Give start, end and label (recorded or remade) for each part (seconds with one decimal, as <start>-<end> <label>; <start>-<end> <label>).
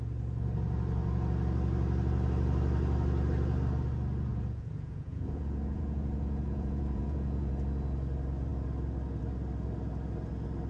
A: 0.0-4.3 recorded; 4.3-7.5 remade; 7.5-10.7 recorded